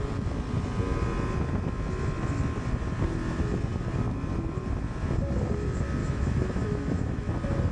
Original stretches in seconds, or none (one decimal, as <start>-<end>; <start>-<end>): 0.0-6.0; 7.3-7.7

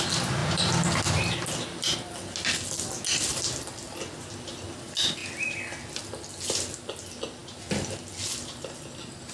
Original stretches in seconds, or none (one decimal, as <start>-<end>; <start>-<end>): 0.0-9.3

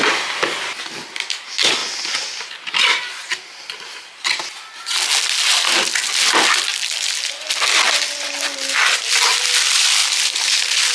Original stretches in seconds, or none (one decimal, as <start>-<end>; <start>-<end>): 0.0-10.9

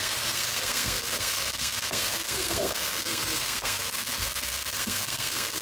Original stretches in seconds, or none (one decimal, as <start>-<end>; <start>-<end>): none

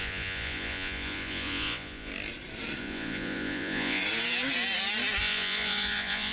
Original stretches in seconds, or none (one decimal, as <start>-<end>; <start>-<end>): 2.1-2.8; 4.0-5.2

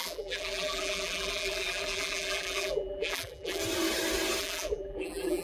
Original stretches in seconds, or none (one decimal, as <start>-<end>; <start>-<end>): 3.6-4.4

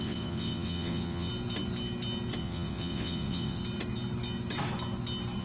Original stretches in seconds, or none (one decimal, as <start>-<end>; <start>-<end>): 1.3-2.4; 3.6-5.4